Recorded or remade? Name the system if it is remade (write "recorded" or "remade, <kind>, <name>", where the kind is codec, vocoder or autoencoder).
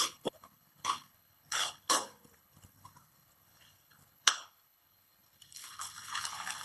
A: remade, codec, HILCodec